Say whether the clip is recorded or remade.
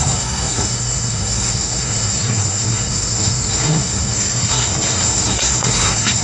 remade